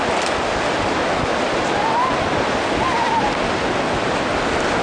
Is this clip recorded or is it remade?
recorded